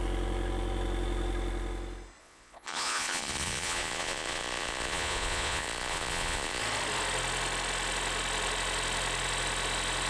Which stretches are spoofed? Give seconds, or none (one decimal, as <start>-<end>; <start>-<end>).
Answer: 2.2-6.6